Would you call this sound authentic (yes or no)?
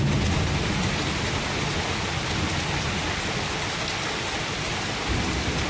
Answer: yes